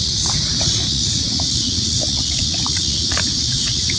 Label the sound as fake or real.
fake